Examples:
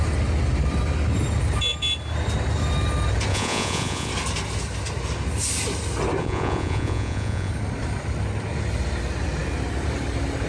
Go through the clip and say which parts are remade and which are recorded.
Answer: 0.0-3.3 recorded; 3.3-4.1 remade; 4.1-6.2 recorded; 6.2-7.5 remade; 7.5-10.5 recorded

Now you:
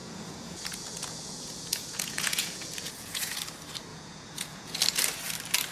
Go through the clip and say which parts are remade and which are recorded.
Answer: 0.0-3.4 remade; 3.4-3.9 recorded; 3.9-4.8 remade; 4.8-5.7 recorded

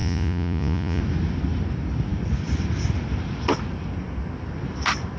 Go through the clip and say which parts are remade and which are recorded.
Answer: 0.0-1.0 remade; 1.0-5.2 recorded

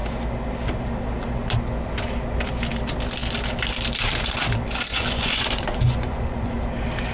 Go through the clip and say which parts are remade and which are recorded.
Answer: 0.0-4.9 recorded; 4.9-6.5 remade; 6.5-7.1 recorded

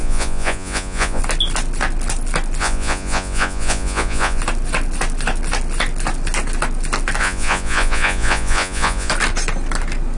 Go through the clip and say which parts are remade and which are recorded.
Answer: 0.0-1.2 remade; 1.2-2.6 recorded; 2.6-4.4 remade; 4.4-7.2 recorded; 7.2-9.1 remade; 9.1-10.2 recorded